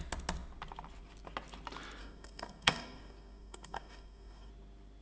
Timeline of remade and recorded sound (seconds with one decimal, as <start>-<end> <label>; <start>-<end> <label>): 0.0-2.0 recorded; 2.0-4.5 remade; 4.5-5.0 recorded